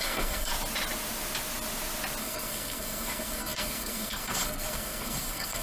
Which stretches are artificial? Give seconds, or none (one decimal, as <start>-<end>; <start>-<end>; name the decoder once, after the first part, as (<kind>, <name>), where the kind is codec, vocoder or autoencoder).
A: 0.0-0.5 (codec, SNAC); 2.2-5.6